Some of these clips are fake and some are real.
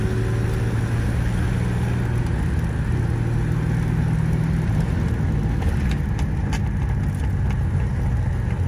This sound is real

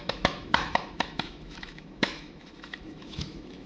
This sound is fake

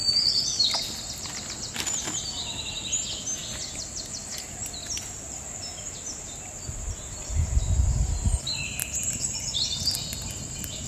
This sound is real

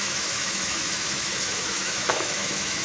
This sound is fake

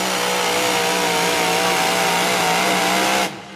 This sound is real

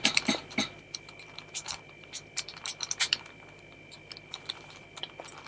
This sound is fake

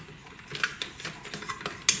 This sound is real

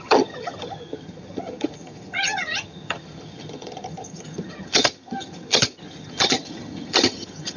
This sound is fake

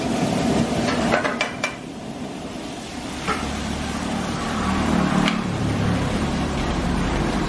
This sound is fake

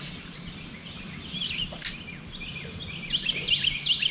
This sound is real